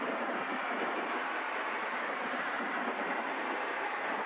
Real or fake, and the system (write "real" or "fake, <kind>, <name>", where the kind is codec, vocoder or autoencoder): fake, vocoder, BigVGAN v2